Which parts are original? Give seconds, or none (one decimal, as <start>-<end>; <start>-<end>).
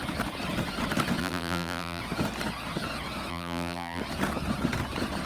0.0-1.2; 2.0-3.3; 4.0-5.3